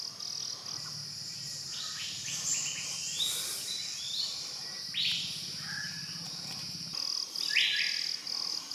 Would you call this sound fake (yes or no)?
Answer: no